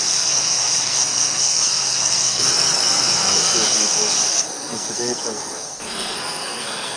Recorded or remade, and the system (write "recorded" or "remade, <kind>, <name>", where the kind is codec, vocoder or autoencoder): remade, codec, SNAC